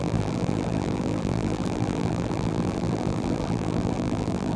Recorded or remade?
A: remade